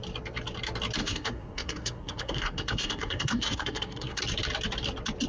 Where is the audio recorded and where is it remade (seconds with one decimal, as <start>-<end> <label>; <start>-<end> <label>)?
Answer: 0.0-1.0 recorded; 1.0-4.2 remade; 4.2-5.3 recorded